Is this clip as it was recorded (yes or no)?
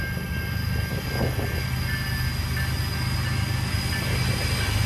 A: yes